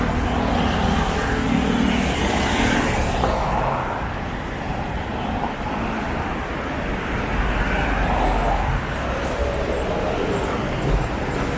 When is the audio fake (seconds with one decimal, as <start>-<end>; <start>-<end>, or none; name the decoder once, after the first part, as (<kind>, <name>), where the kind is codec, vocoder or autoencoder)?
4.7-5.4 (vocoder, BigVGAN v2)